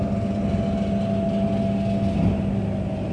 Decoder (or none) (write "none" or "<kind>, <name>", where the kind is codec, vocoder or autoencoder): none